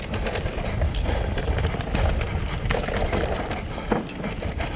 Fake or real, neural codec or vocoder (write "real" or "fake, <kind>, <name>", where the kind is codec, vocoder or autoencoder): real